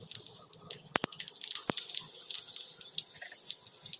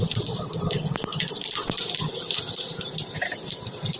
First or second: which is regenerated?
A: second